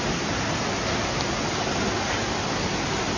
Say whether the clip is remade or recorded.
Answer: recorded